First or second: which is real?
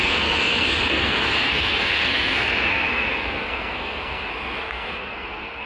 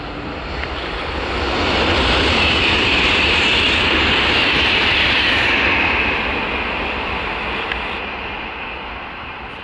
second